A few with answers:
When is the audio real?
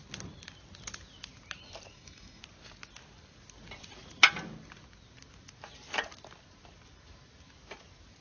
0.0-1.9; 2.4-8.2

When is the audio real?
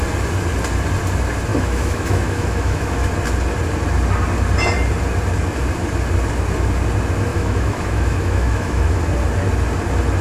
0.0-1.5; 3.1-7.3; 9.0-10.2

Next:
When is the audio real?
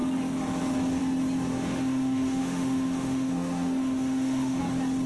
0.0-1.5; 4.6-5.1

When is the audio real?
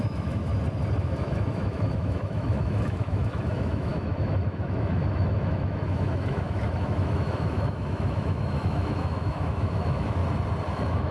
0.5-1.0; 10.2-10.7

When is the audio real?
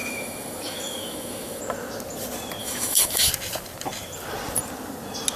1.6-2.6; 3.3-5.4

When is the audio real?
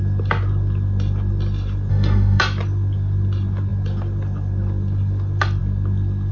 0.0-1.9; 2.4-6.3